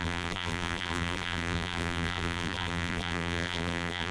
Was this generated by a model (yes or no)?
yes